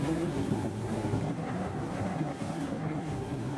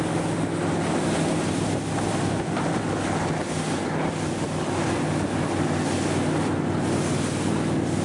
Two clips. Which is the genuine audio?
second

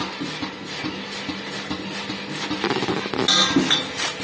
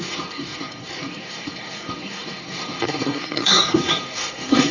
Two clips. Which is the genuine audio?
first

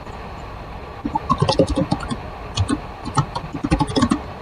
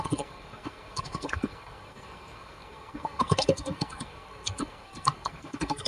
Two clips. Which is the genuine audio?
first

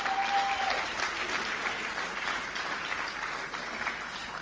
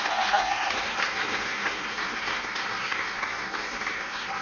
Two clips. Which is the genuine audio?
first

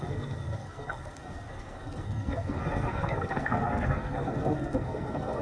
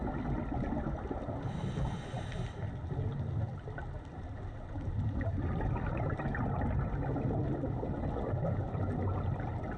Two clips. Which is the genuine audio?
second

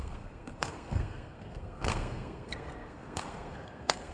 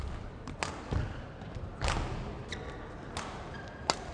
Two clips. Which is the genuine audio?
second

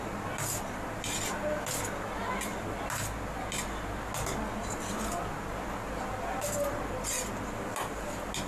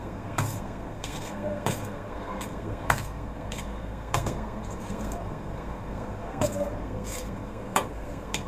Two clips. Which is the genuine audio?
first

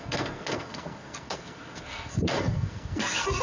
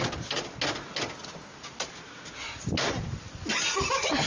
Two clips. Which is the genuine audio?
second